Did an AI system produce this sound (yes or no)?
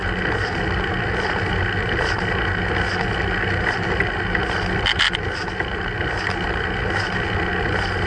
no